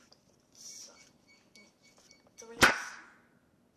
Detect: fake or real real